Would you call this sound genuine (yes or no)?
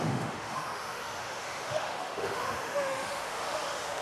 no